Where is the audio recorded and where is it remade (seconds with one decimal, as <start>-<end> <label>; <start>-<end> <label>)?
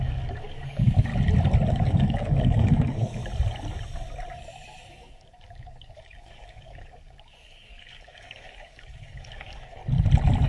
0.0-1.1 remade; 1.1-1.7 recorded; 1.7-3.2 remade; 3.2-4.9 recorded; 4.9-9.8 remade; 9.8-10.5 recorded